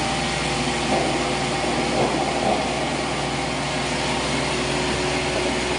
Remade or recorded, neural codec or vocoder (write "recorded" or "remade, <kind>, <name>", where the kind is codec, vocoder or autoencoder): recorded